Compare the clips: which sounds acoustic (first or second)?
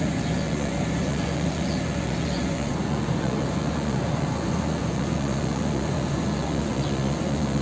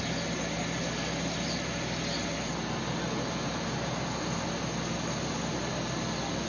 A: second